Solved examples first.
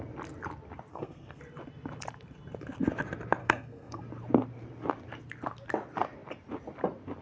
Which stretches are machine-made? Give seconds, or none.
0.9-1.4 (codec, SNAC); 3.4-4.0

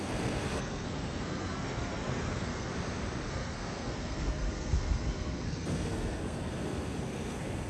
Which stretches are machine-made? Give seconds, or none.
0.0-2.7 (codec, SNAC); 3.3-7.7

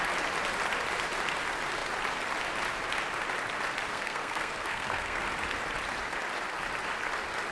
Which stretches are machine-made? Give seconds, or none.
3.9-5.2 (codec, SNAC)

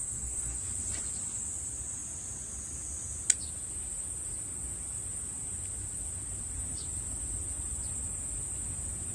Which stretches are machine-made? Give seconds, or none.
0.0-0.6 (codec, SNAC)

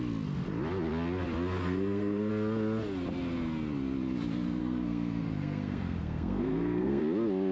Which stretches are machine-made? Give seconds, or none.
1.6-2.3 (codec, SNAC); 4.6-7.0

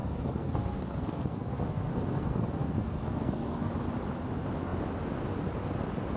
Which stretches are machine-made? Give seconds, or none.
0.0-3.7 (codec, SNAC)